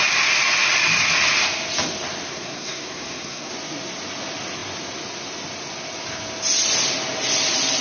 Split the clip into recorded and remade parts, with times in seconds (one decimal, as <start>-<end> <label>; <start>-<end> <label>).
0.0-2.3 recorded; 2.3-3.5 remade; 3.5-7.8 recorded